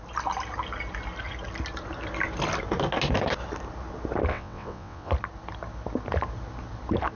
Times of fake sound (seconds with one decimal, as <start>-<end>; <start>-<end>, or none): 4.3-5.1